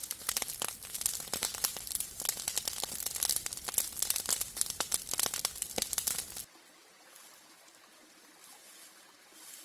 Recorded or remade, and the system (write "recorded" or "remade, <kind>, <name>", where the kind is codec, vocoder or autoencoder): recorded